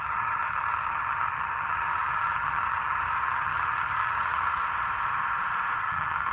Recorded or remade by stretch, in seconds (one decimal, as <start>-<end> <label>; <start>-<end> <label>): 0.0-4.6 remade; 4.6-5.8 recorded; 5.8-6.3 remade